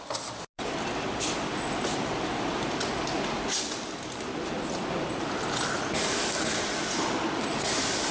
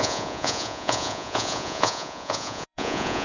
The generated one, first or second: second